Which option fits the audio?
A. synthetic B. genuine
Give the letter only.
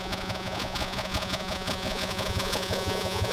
A